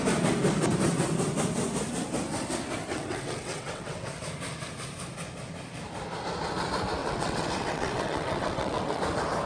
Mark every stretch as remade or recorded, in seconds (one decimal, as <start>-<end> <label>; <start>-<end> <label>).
0.0-2.9 recorded; 2.9-4.1 remade; 4.1-7.0 recorded; 7.0-9.0 remade; 9.0-9.5 recorded